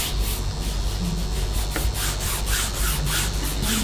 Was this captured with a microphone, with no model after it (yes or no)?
yes